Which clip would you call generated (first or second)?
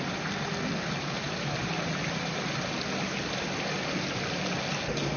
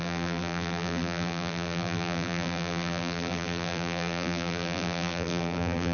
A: second